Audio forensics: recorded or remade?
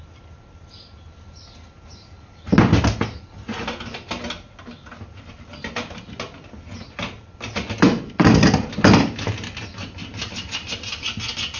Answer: recorded